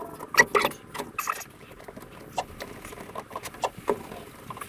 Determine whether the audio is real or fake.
real